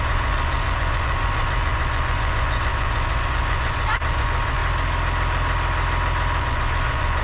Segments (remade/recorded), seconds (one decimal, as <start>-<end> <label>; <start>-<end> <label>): 0.0-4.6 remade; 4.6-6.4 recorded; 6.4-7.2 remade